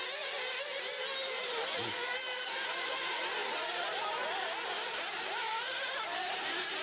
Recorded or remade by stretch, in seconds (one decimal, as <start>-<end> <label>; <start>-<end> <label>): 0.0-2.7 recorded; 2.7-3.4 remade; 3.4-4.7 recorded; 4.7-6.8 remade